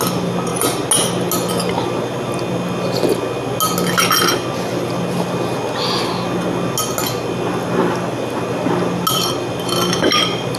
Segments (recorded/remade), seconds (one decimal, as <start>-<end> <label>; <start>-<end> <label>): 0.0-10.6 recorded